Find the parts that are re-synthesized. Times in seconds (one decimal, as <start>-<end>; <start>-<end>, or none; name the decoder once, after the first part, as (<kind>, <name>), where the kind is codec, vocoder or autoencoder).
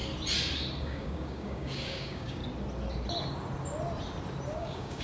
0.8-2.4 (codec, DAC); 4.6-5.0